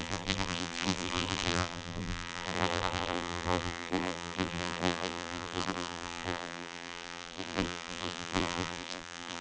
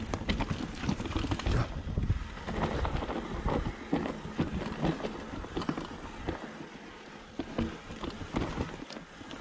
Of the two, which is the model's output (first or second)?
first